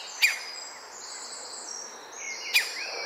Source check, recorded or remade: recorded